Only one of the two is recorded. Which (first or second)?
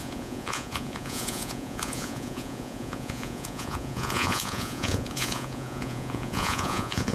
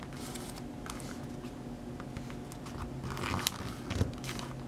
second